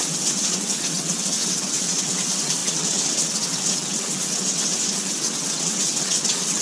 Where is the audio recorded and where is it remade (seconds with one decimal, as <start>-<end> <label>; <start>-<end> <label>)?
0.0-6.6 remade

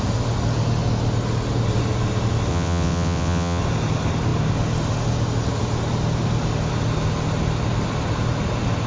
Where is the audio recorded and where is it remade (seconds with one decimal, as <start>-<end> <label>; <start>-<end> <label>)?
0.0-2.5 recorded; 2.5-3.6 remade; 3.6-8.9 recorded

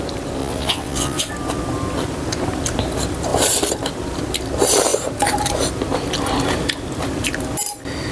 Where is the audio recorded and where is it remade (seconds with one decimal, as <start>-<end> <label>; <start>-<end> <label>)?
0.0-0.4 recorded; 0.4-1.3 remade; 1.3-8.1 recorded

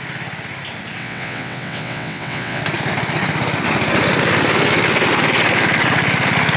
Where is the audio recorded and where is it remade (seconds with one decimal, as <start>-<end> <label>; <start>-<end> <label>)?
0.0-1.0 recorded; 1.0-2.6 remade; 2.6-6.6 recorded

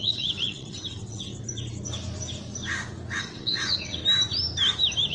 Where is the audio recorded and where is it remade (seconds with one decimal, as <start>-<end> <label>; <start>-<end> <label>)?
0.0-1.3 remade; 1.3-3.2 recorded; 3.2-4.0 remade; 4.0-5.1 recorded

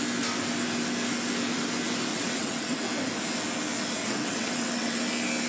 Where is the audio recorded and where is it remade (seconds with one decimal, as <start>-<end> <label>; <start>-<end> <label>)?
0.0-2.1 recorded; 2.1-2.8 remade; 2.8-4.0 recorded; 4.0-5.0 remade; 5.0-5.5 recorded

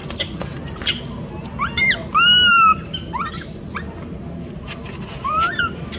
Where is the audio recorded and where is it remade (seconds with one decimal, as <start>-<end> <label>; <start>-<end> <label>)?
0.0-6.0 recorded